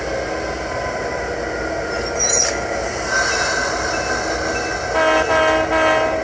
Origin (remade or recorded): recorded